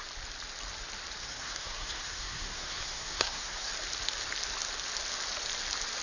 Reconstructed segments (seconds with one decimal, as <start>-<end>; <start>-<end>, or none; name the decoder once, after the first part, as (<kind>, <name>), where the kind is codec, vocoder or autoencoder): 1.2-3.7 (codec, SNAC)